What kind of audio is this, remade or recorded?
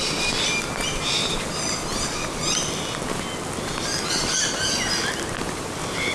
recorded